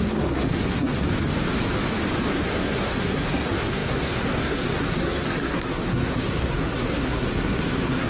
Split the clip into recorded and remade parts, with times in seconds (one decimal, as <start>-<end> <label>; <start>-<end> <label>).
0.0-0.9 remade; 0.9-2.3 recorded; 2.3-8.1 remade